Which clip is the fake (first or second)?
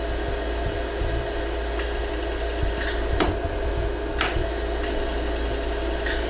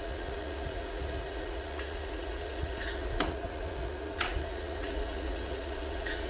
second